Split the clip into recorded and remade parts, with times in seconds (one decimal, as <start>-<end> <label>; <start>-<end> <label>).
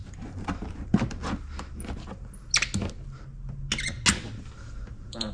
0.0-1.2 remade; 1.2-4.4 recorded; 4.4-5.3 remade